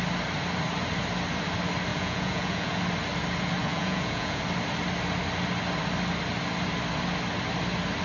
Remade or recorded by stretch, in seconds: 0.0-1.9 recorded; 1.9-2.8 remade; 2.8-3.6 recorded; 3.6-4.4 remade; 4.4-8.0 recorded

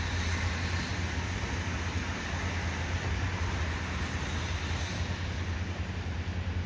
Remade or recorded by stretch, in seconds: 0.0-6.7 recorded

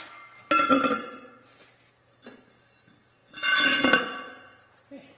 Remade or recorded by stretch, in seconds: 0.0-5.2 recorded

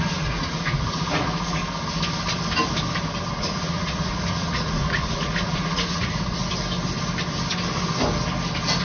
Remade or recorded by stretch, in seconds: 0.0-1.6 remade; 1.6-3.3 recorded; 3.3-6.4 remade; 6.4-8.8 recorded

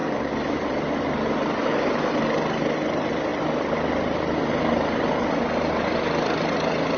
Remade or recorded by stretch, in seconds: 0.0-1.6 recorded; 1.6-2.2 remade; 2.2-7.0 recorded

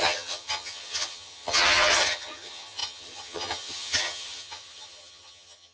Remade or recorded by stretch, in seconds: 0.0-5.7 remade

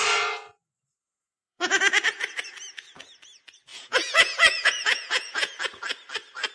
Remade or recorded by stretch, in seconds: 0.0-1.0 recorded; 1.0-1.8 remade; 1.8-3.7 recorded; 3.7-5.6 remade; 5.6-6.5 recorded

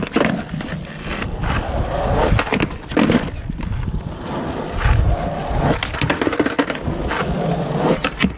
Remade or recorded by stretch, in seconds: 0.0-8.4 recorded